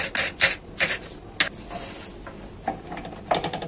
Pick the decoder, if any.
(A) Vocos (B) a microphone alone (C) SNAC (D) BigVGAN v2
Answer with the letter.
B